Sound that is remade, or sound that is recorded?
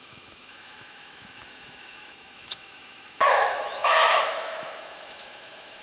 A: remade